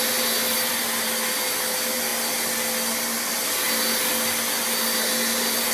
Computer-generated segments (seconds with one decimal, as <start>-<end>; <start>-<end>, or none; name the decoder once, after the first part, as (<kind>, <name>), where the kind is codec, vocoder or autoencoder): none